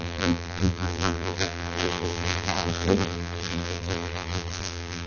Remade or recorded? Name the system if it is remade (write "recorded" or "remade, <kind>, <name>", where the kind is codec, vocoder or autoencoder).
remade, vocoder, BigVGAN v2